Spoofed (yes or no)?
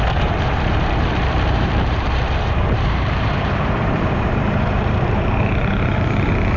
yes